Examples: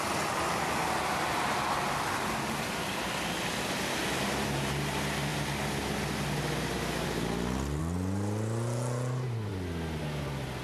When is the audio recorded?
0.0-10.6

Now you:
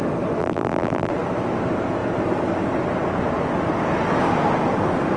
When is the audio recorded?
0.0-0.4; 1.1-5.2